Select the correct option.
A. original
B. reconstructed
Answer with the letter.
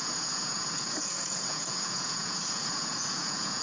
B